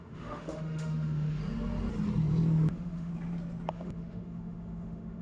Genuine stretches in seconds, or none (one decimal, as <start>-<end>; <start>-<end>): 1.4-2.7; 3.1-3.7